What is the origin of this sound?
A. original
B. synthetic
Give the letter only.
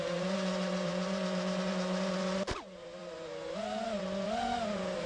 B